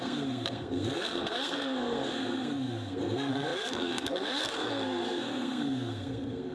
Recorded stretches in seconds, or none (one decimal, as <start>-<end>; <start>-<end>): none